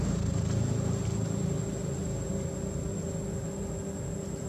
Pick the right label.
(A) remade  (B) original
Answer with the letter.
B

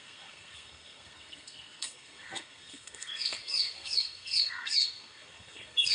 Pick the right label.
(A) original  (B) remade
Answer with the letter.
B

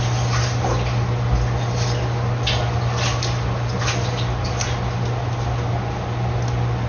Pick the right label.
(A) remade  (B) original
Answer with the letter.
B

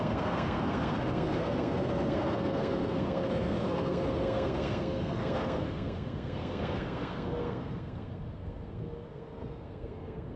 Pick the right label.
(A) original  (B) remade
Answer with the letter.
B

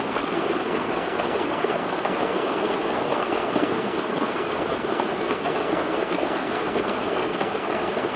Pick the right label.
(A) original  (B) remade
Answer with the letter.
B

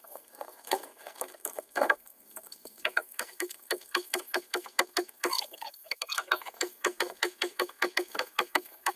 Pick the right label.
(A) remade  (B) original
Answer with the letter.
A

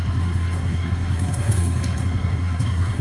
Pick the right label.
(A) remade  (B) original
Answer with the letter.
A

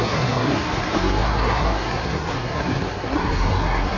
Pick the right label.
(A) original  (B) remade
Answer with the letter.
B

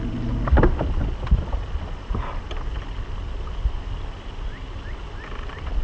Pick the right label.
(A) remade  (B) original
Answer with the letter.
B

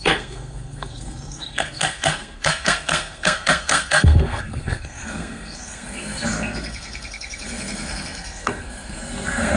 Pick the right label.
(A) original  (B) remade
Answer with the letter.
B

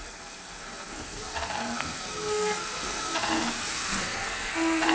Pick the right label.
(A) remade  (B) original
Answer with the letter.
A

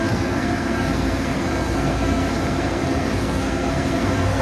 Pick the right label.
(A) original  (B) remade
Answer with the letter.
B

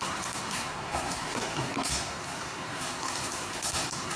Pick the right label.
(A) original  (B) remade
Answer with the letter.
B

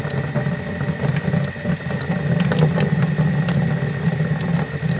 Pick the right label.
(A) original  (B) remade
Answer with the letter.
A